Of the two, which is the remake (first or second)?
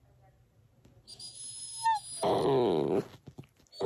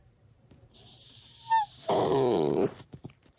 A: second